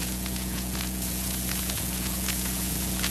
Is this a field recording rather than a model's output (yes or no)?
no